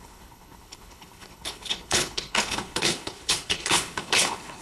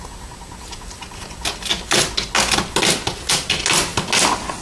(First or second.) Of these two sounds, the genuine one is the second